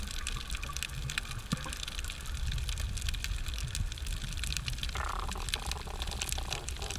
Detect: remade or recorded recorded